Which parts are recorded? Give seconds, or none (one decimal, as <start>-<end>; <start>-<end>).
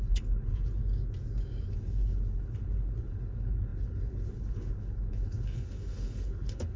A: 0.8-1.7